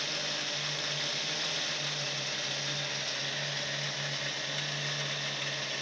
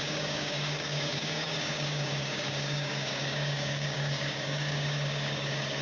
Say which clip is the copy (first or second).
second